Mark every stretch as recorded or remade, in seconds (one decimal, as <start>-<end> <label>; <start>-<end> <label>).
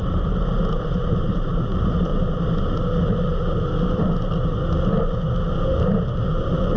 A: 0.0-2.1 remade; 2.1-6.2 recorded; 6.2-6.8 remade